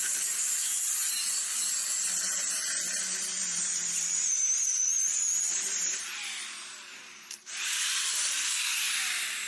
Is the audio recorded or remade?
remade